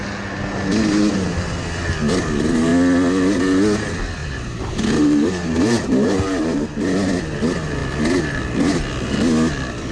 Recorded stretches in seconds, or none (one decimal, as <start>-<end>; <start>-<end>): 0.0-4.2; 6.7-9.9